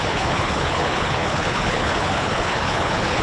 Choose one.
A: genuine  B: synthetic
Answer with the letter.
B